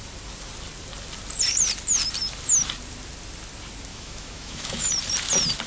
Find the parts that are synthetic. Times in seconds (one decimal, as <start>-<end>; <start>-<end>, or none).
3.9-4.9